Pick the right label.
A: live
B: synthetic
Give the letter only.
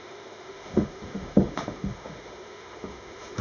B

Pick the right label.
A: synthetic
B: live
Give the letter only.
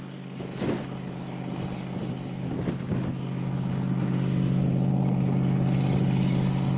B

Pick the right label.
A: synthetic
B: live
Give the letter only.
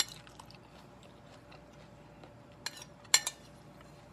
B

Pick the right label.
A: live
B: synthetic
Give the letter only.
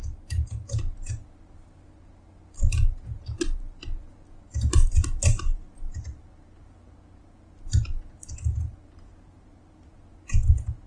A